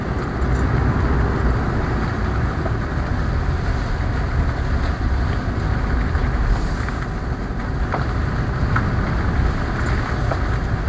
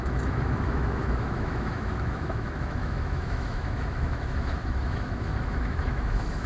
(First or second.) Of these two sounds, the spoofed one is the second